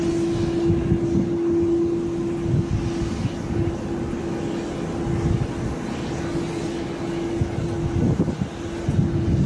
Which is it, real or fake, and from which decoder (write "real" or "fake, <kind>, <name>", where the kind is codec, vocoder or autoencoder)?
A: real